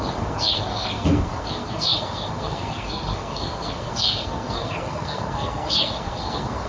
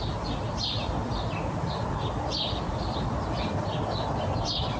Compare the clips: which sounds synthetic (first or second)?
first